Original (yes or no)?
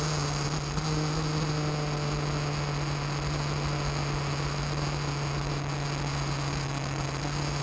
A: yes